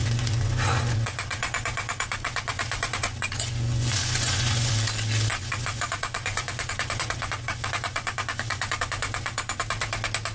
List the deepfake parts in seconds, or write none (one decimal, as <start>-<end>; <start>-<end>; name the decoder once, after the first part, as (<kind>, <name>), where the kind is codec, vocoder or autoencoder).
0.0-4.7 (vocoder, Vocos); 5.3-9.6